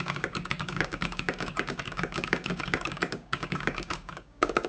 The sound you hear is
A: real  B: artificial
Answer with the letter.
B